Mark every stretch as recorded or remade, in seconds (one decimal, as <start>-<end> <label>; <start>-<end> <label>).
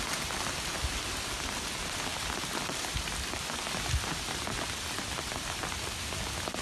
0.0-6.6 recorded